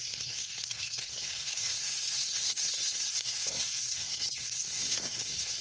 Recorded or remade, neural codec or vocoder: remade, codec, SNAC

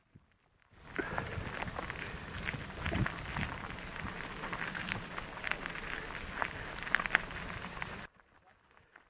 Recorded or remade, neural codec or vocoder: recorded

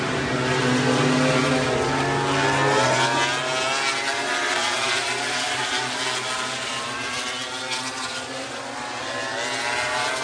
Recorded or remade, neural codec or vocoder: recorded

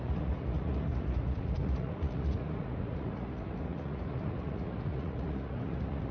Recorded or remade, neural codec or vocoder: remade, vocoder, Vocos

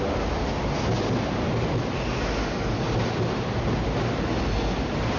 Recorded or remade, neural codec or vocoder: recorded